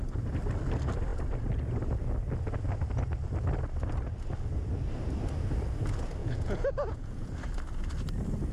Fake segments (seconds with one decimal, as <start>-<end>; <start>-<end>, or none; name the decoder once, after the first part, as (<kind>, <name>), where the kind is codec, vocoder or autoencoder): 6.2-7.3 (vocoder, Vocos)

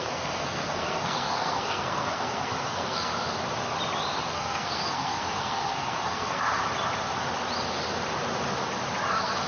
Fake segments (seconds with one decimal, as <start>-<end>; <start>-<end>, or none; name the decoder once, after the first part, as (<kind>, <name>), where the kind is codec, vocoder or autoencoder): 0.0-3.1 (codec, SNAC); 4.3-6.6; 9.1-9.5

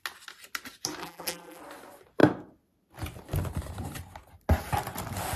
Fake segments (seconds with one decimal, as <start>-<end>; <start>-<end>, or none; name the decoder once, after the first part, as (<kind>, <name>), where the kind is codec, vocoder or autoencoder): 1.0-1.6 (vocoder, BigVGAN v2)